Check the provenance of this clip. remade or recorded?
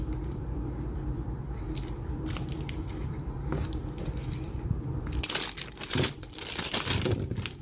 remade